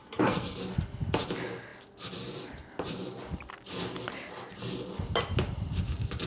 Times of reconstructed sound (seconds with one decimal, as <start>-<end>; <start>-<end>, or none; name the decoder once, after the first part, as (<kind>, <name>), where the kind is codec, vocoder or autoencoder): 0.0-0.6 (codec, SNAC)